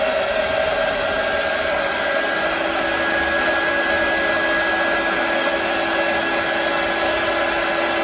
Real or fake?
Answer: real